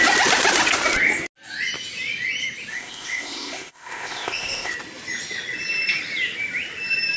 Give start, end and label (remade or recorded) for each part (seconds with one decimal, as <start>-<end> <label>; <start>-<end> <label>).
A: 0.0-2.7 recorded; 2.7-4.7 remade; 4.7-7.2 recorded